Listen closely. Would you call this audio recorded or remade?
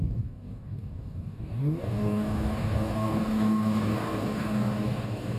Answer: remade